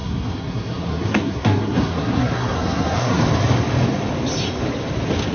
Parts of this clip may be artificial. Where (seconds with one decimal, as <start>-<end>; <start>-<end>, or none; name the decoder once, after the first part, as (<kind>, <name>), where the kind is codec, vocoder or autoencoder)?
0.0-3.2 (codec, SNAC)